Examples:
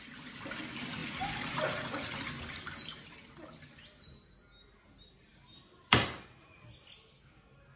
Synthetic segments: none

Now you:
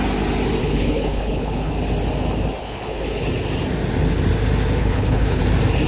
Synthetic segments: 0.6-1.7 (codec, HILCodec); 2.6-3.3; 4.8-5.4

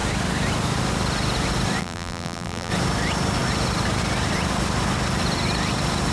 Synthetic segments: 1.8-2.7 (vocoder, BigVGAN v2)

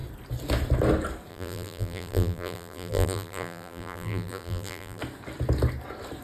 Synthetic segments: 1.3-5.0 (vocoder, BigVGAN v2)